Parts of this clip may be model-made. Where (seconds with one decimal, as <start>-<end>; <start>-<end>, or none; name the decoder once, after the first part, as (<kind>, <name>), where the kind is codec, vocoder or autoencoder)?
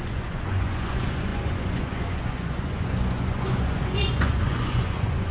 0.0-5.3 (vocoder, Vocos)